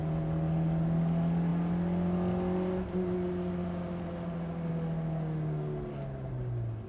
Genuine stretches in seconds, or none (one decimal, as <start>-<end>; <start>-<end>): 0.0-6.9